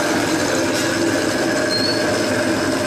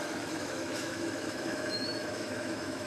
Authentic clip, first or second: first